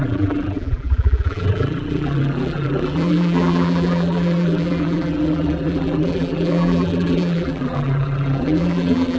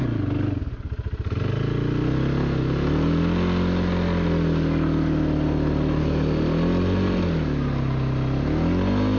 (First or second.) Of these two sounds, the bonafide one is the second